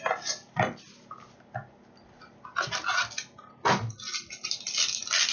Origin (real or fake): real